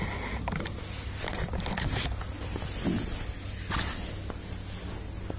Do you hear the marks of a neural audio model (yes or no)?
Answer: no